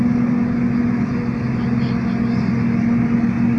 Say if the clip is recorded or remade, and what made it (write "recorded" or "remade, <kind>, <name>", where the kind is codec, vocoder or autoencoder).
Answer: recorded